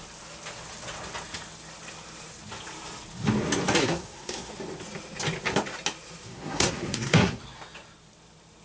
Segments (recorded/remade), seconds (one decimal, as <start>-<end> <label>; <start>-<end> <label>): 0.0-3.8 recorded; 3.8-4.5 remade; 4.5-6.3 recorded; 6.3-7.4 remade; 7.4-8.6 recorded